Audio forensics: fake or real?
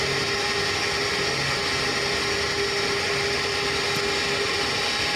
real